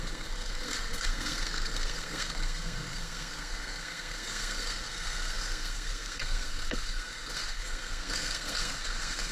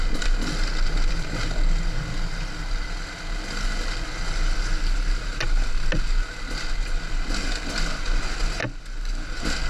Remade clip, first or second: first